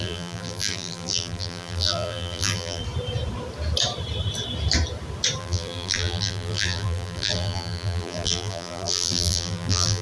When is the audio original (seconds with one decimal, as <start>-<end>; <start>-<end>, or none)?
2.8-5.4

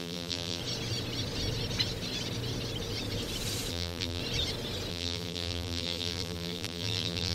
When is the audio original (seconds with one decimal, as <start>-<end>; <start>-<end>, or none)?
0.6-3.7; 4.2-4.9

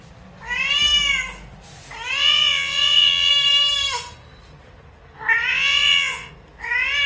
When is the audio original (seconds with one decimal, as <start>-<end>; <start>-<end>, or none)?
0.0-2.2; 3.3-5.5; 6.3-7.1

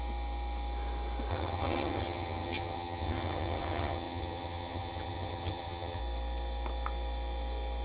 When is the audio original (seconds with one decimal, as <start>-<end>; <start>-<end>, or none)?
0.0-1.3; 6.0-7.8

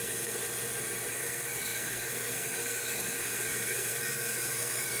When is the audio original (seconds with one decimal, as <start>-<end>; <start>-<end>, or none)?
0.4-1.1

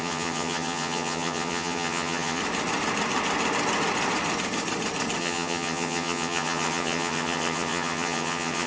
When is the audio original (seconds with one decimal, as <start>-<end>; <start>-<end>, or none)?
2.4-5.2

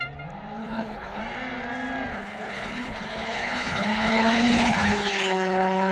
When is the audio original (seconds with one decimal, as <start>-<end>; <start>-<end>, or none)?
0.0-0.6; 1.2-2.1